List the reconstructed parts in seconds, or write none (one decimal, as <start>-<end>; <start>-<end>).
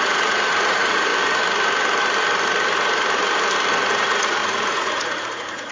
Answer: 0.0-1.1; 3.7-5.7